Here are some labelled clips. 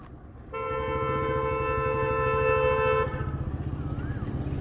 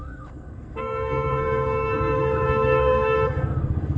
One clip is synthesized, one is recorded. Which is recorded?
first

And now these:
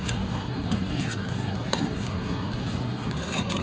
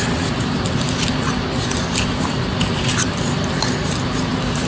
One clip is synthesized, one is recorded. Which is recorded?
second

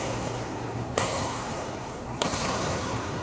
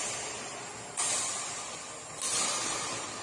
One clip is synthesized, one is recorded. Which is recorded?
second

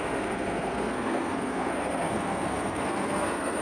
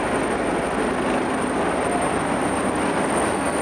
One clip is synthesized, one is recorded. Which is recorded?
second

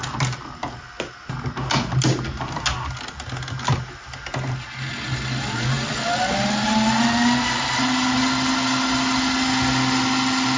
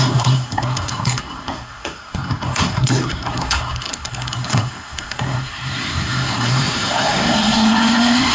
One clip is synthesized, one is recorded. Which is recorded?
first